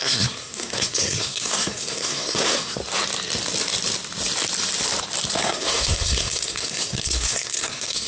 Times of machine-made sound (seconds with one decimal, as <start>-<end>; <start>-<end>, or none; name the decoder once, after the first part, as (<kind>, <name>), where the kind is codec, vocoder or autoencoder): 0.0-2.8 (codec, SNAC); 5.4-8.1